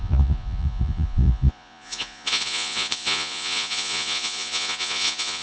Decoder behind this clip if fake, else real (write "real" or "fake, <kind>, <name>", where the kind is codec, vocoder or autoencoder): fake, vocoder, Vocos